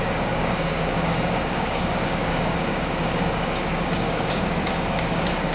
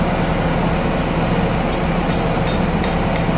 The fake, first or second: first